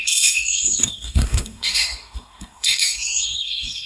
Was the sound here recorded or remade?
remade